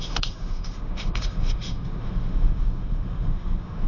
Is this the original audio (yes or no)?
no